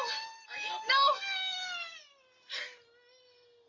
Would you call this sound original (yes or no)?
yes